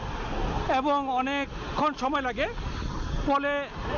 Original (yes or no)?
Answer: yes